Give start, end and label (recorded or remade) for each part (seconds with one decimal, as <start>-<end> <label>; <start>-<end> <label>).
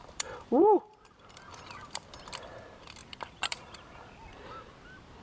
0.0-2.6 remade; 2.6-3.0 recorded; 3.0-4.3 remade; 4.3-5.2 recorded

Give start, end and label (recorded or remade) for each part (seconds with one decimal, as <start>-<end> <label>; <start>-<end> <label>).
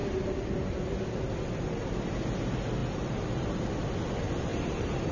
0.0-2.8 recorded; 2.8-3.6 remade; 3.6-4.5 recorded; 4.5-5.1 remade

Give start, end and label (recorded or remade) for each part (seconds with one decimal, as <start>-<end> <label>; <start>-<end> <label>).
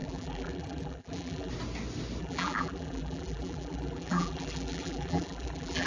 0.0-1.5 remade; 1.5-2.2 recorded; 2.2-5.9 remade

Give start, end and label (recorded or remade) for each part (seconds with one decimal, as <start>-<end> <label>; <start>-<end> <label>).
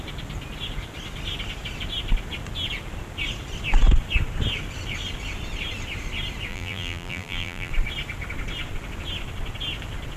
0.0-6.5 recorded; 6.5-7.7 remade; 7.7-10.2 recorded